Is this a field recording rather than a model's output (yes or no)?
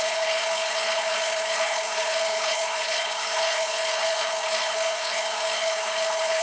no